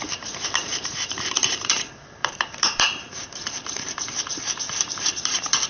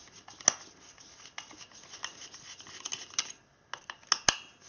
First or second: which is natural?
second